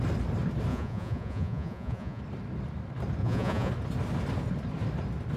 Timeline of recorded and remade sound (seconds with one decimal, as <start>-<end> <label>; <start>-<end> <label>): 0.0-0.7 recorded; 0.7-2.2 remade; 2.2-3.2 recorded; 3.2-3.7 remade; 3.7-5.4 recorded